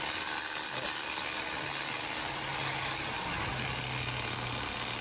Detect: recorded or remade recorded